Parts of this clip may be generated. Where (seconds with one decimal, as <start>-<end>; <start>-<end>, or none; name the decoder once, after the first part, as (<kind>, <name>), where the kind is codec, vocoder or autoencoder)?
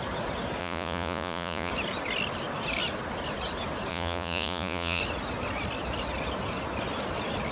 0.6-1.7 (vocoder, Vocos); 3.9-5.0